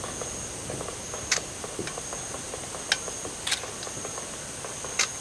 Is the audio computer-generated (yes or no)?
no